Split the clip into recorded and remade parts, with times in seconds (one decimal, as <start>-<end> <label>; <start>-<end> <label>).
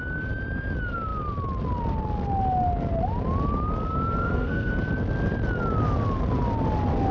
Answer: 0.0-4.2 recorded; 4.2-4.7 remade; 4.7-7.1 recorded